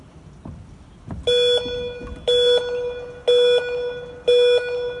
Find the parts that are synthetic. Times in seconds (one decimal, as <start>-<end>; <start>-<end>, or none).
none